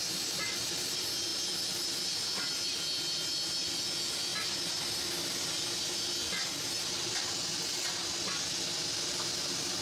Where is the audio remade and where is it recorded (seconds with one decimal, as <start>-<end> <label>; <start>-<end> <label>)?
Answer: 0.0-9.8 recorded